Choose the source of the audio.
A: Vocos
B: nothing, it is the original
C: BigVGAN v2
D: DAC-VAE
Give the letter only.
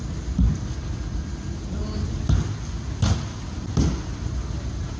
B